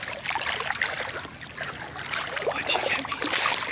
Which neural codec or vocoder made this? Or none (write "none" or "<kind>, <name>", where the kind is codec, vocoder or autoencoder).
none